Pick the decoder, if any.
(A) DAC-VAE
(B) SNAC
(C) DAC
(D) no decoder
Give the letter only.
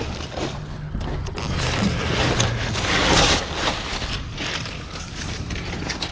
D